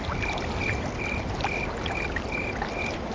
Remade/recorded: recorded